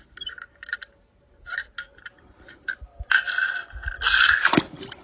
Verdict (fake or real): real